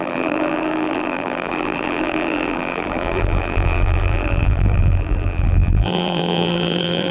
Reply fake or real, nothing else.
fake